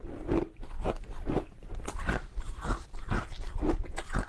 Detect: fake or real real